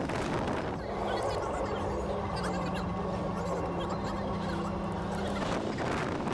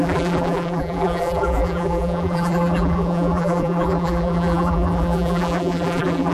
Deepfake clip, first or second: second